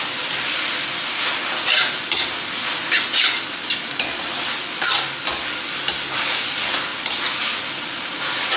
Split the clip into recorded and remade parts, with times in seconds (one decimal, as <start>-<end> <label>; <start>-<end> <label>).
0.0-8.6 recorded